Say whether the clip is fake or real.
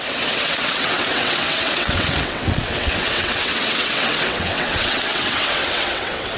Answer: fake